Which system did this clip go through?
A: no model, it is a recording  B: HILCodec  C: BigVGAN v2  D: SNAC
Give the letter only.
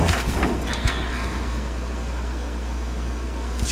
D